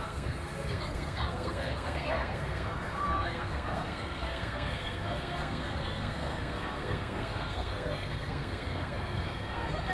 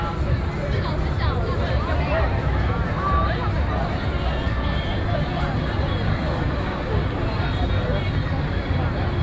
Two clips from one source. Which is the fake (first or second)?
first